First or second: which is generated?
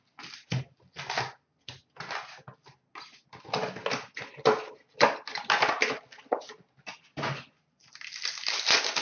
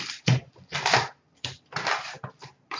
second